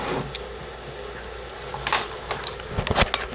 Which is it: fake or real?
real